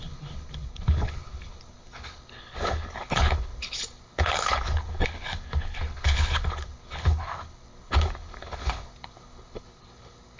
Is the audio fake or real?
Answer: fake